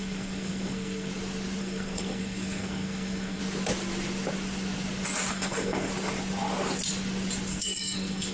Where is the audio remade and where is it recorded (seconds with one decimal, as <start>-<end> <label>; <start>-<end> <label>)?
0.0-1.1 remade; 1.1-1.6 recorded; 1.6-3.4 remade; 3.4-5.3 recorded; 5.3-5.9 remade; 5.9-7.5 recorded; 7.5-8.3 remade